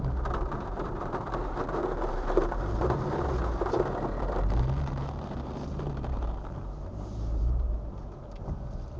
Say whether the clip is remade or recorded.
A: remade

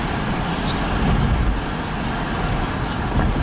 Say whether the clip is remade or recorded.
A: recorded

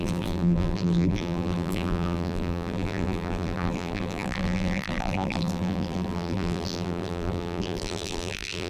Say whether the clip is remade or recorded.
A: remade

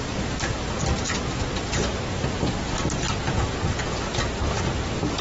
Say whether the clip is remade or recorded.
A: recorded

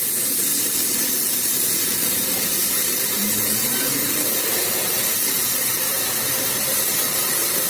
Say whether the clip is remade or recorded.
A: remade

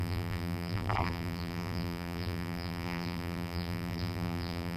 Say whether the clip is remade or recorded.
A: remade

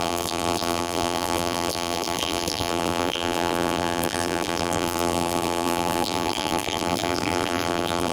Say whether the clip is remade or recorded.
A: remade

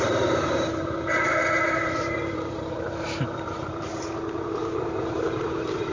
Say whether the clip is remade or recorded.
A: remade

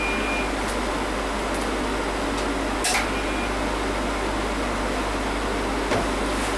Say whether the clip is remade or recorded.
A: recorded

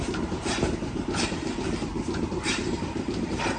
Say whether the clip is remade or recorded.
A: remade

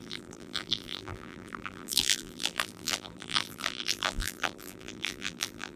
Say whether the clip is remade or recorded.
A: remade